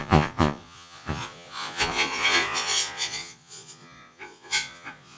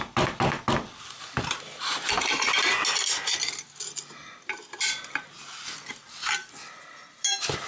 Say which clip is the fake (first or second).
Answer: first